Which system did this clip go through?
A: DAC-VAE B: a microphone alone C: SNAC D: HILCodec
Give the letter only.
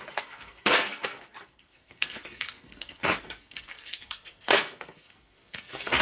C